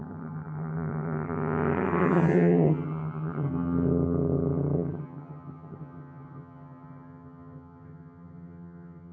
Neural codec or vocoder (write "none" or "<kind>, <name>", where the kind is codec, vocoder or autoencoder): vocoder, HiFi-GAN